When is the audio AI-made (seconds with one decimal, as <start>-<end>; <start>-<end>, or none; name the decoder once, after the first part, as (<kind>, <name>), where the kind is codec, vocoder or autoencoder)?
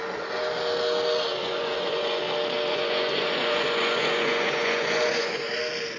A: 1.4-2.2 (vocoder, Vocos); 2.7-5.5